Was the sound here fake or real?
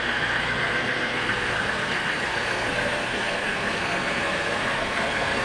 fake